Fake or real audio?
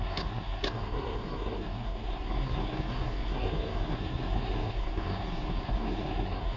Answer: fake